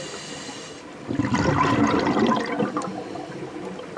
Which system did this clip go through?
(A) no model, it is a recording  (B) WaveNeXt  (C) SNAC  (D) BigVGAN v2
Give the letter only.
A